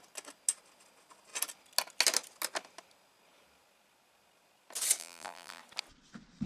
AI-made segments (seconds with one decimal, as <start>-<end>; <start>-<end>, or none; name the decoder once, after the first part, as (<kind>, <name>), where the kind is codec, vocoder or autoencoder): 5.0-5.6 (vocoder, BigVGAN v2)